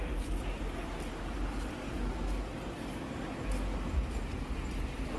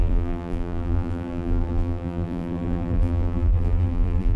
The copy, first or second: second